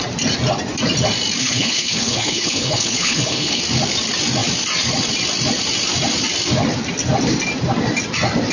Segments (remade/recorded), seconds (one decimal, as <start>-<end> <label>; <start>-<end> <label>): 0.0-1.4 recorded; 1.4-3.6 remade; 3.6-8.5 recorded